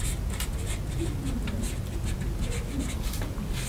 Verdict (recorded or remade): recorded